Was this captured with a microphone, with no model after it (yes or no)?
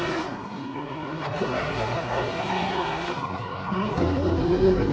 no